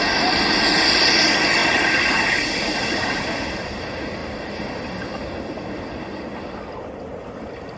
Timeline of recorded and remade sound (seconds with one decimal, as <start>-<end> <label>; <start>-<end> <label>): 0.0-1.6 recorded; 1.6-3.0 remade; 3.0-4.2 recorded; 4.2-7.8 remade